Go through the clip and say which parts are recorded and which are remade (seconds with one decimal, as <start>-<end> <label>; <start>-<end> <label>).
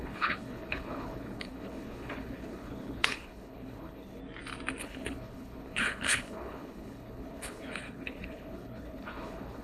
0.0-4.2 remade; 4.2-4.8 recorded; 4.8-9.6 remade